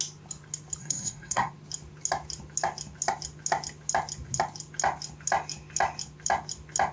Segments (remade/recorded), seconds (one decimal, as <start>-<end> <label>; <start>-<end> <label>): 0.0-0.8 recorded; 0.8-1.5 remade; 1.5-6.9 recorded